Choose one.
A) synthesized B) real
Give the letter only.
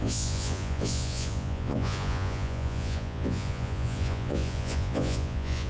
A